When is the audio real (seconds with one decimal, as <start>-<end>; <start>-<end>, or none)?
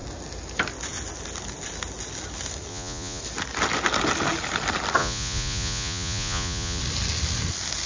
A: 0.0-2.7; 3.2-5.0; 6.8-7.9